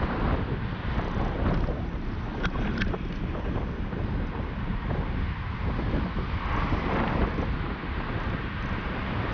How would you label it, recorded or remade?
recorded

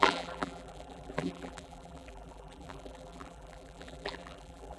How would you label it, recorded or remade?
remade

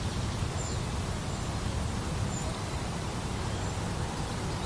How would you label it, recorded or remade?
remade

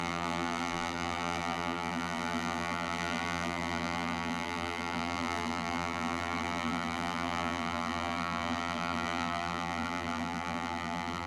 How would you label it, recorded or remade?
remade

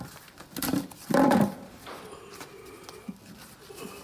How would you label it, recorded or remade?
remade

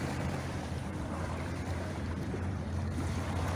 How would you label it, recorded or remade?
remade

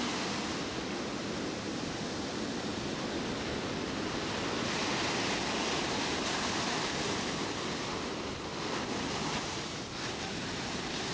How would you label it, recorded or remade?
recorded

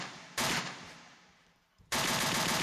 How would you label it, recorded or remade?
remade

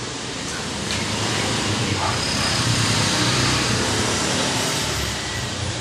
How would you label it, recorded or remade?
remade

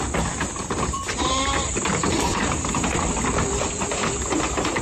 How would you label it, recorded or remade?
remade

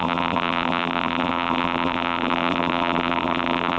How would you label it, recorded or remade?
remade